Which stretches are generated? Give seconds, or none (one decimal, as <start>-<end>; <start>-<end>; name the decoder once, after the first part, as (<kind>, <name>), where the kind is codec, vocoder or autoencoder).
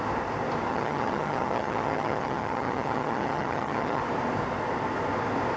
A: 0.7-4.0 (vocoder, HiFi-GAN)